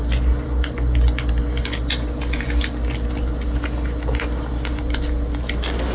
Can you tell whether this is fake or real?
real